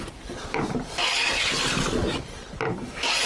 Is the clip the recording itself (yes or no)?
yes